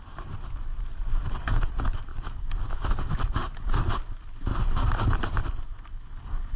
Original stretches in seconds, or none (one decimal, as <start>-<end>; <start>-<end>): 0.0-2.1; 2.7-4.5; 5.8-6.6